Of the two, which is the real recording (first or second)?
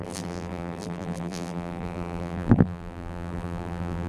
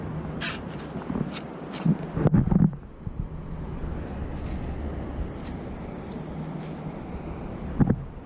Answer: second